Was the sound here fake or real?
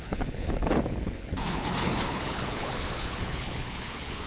fake